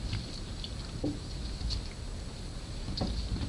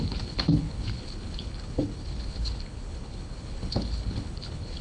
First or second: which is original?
first